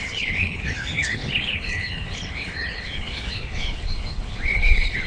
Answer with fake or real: fake